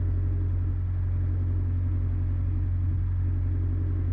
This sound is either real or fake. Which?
real